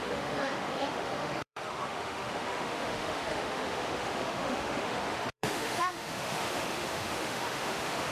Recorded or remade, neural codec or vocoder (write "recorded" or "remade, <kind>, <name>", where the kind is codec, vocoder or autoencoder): remade, autoencoder, DAC-VAE